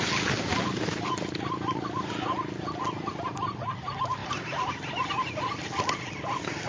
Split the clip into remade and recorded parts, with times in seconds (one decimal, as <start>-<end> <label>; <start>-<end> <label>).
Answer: 0.0-6.7 recorded